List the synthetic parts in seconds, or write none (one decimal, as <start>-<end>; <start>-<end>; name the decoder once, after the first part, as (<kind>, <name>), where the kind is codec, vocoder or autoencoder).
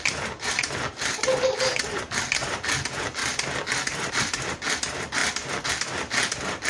none